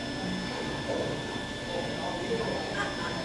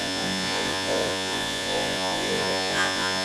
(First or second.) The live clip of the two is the first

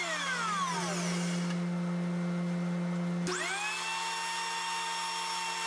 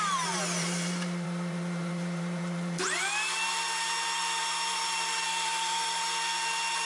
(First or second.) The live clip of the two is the first